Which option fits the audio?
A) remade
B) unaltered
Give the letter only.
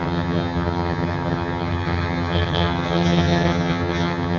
A